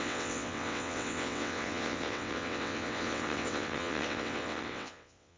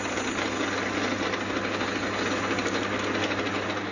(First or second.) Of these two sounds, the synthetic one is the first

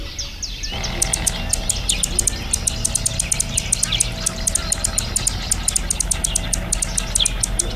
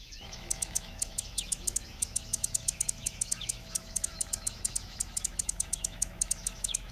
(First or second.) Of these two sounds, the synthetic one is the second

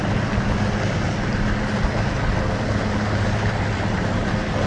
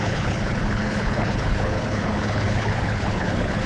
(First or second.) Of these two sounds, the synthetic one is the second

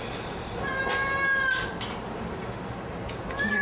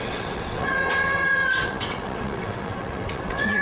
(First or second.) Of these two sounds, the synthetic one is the second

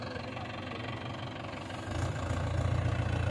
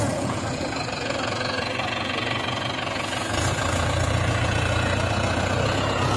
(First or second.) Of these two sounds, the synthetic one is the second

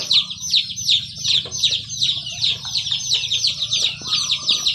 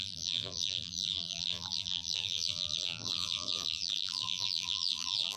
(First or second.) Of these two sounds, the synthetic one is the second